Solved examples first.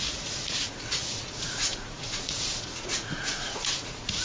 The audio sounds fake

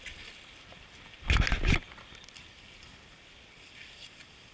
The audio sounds real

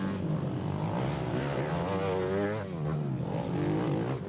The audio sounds real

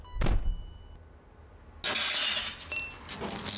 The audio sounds real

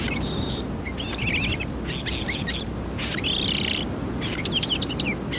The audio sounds real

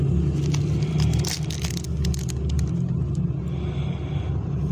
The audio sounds real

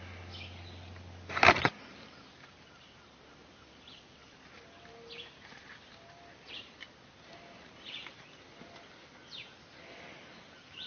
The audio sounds real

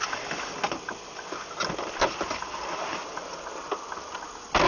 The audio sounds real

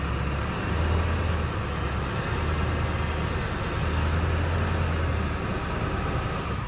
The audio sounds real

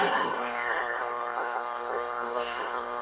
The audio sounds fake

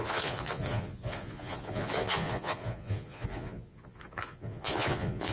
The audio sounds fake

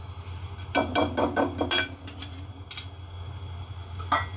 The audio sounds real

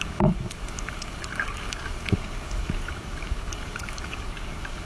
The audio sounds fake